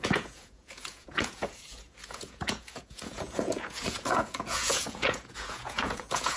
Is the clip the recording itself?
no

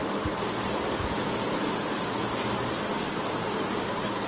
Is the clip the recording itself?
no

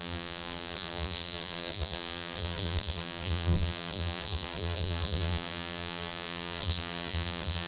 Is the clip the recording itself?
no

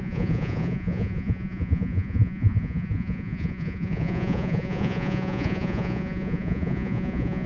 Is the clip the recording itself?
no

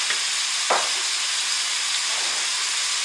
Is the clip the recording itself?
yes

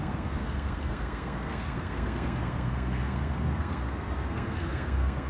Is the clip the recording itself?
no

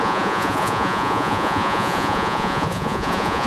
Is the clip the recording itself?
no